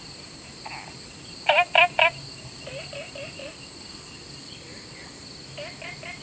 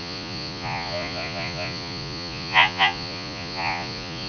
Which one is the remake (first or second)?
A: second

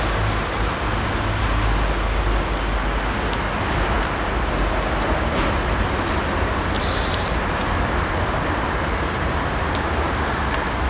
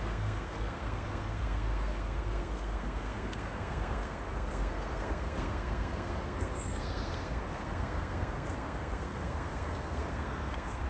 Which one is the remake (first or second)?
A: second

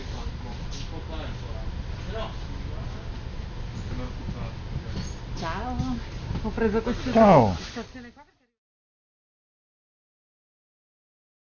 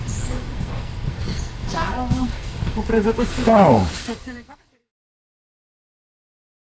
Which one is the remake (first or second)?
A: second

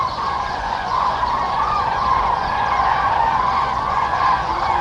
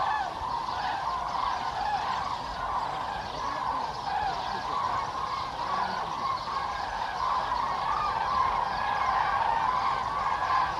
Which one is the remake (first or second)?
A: first